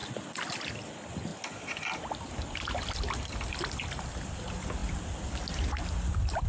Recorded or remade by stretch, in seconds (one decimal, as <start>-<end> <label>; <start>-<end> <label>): 0.0-1.3 recorded; 1.3-4.3 remade; 4.3-6.5 recorded